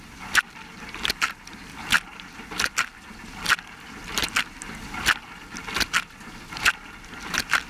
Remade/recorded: recorded